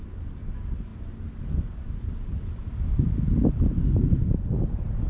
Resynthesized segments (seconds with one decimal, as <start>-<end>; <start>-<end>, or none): none